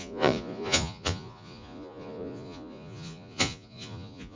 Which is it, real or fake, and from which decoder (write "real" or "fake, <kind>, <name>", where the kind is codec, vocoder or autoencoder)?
fake, vocoder, Vocos